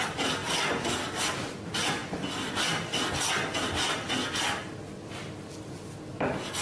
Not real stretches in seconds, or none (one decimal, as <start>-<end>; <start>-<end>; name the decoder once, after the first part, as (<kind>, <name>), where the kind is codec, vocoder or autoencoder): none